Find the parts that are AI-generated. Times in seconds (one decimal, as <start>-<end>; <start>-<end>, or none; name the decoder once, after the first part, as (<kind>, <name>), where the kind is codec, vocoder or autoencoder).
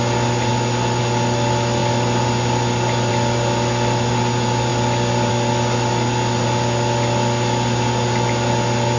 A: none